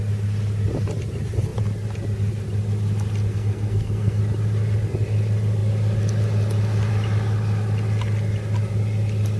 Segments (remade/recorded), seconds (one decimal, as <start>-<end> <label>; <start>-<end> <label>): 0.0-3.3 recorded; 3.3-4.2 remade; 4.2-9.4 recorded